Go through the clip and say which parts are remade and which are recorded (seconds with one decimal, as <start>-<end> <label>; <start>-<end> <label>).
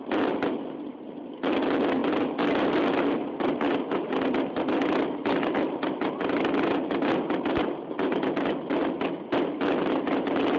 0.0-10.6 recorded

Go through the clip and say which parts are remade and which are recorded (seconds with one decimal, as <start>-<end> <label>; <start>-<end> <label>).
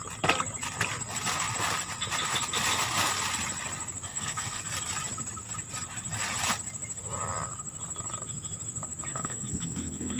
0.0-4.1 recorded; 4.1-4.6 remade; 4.6-9.1 recorded; 9.1-10.2 remade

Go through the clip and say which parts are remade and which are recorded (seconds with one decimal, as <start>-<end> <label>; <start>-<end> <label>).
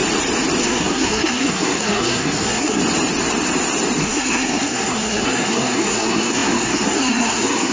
0.0-0.6 recorded; 0.6-2.8 remade; 2.8-4.0 recorded; 4.0-7.7 remade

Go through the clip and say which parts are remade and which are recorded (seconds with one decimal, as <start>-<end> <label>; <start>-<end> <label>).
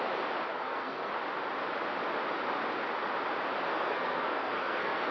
0.0-0.5 recorded; 0.5-1.1 remade; 1.1-3.7 recorded; 3.7-5.1 remade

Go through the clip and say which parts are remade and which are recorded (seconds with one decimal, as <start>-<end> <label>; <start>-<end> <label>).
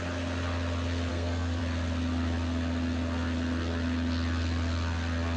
0.0-1.1 recorded; 1.1-1.6 remade; 1.6-5.4 recorded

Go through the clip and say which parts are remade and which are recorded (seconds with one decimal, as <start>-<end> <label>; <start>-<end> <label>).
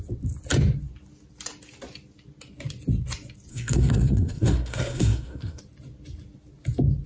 0.0-3.5 recorded; 3.5-5.6 remade; 5.6-7.1 recorded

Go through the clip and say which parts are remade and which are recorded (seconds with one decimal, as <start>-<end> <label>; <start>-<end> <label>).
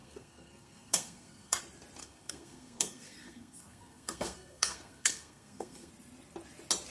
0.0-1.6 remade; 1.6-2.0 recorded; 2.0-5.9 remade; 5.9-6.9 recorded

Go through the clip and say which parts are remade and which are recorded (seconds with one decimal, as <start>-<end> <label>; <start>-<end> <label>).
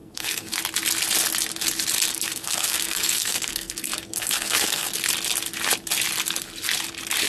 0.0-0.6 remade; 0.6-2.1 recorded; 2.1-4.9 remade; 4.9-7.3 recorded